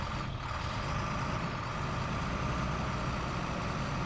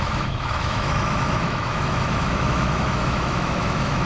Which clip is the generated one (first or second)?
second